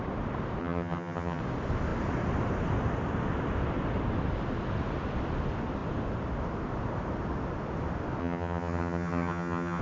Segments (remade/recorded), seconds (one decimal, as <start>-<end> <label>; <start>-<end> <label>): 0.0-0.6 recorded; 0.6-1.4 remade; 1.4-8.2 recorded; 8.2-9.8 remade